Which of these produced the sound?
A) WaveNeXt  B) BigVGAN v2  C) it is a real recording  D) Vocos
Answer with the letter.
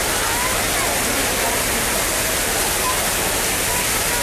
C